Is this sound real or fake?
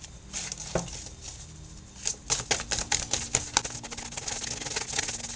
real